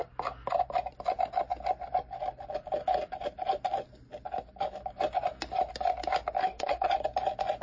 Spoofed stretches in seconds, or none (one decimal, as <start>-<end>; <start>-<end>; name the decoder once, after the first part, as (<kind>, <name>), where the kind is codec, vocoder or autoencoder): 6.4-6.9 (codec, DAC)